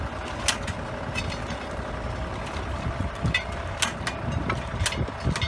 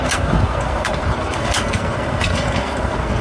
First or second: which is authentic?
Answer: first